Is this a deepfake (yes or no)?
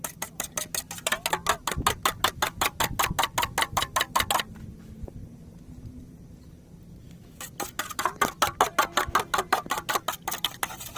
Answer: no